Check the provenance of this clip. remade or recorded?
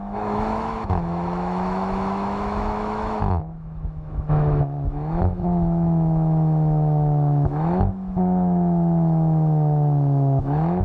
remade